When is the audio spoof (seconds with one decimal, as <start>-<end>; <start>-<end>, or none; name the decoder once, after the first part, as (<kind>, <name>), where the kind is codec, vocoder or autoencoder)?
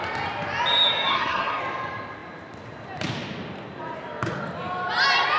1.1-1.6 (codec, SNAC)